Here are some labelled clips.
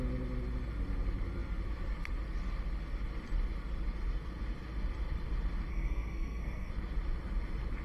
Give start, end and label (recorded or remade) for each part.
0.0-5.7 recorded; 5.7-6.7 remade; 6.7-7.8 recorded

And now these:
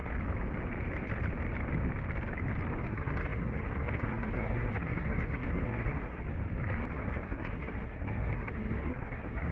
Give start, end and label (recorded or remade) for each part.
0.0-2.9 recorded; 2.9-6.2 remade; 6.2-6.9 recorded; 6.9-9.5 remade

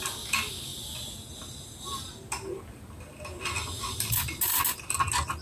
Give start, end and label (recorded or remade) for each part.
0.0-5.4 recorded